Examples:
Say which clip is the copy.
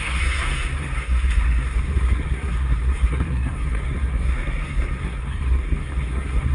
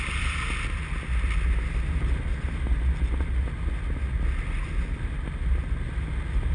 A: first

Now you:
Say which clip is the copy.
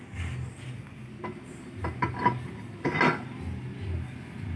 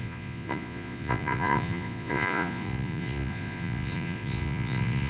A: second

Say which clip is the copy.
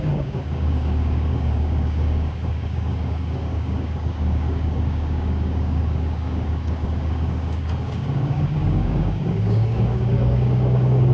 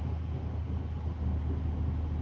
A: first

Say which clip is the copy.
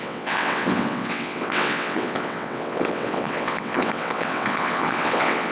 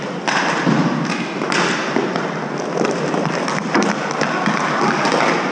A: first